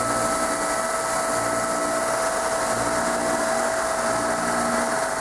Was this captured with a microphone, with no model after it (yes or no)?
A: yes